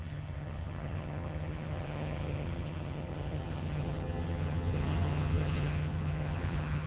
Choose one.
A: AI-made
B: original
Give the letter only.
A